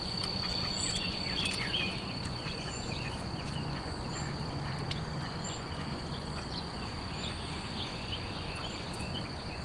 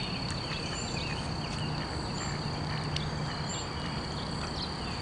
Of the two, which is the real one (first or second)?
second